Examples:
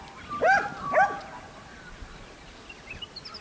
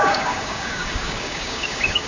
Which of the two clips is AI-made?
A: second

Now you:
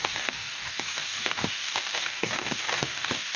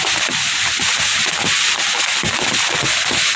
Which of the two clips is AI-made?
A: first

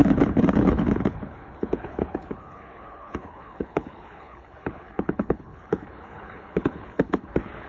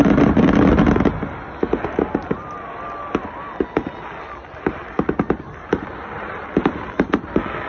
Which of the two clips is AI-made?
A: first